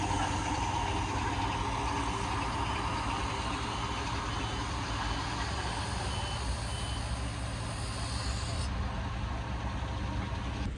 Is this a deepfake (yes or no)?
no